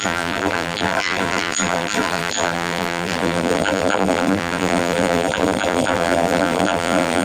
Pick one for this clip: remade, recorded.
remade